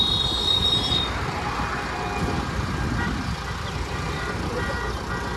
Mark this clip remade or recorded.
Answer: recorded